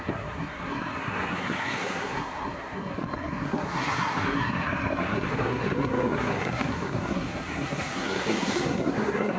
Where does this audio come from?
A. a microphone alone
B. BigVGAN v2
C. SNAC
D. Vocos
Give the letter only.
C